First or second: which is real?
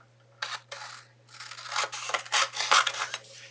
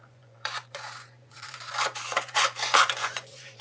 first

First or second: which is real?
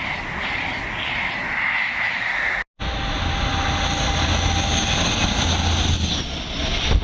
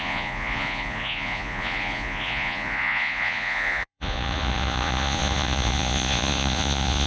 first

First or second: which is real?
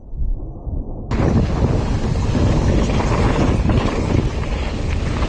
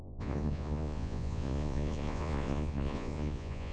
first